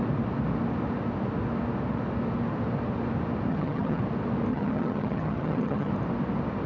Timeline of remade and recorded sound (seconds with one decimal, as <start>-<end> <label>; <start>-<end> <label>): 0.0-3.5 recorded; 3.5-4.0 remade; 4.0-4.5 recorded; 4.5-5.9 remade; 5.9-6.7 recorded